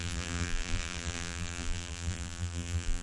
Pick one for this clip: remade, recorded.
remade